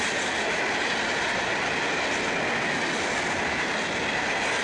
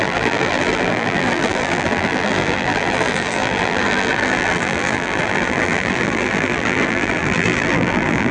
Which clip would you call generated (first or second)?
second